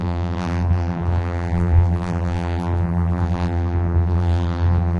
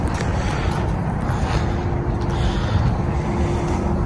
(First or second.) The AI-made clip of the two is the first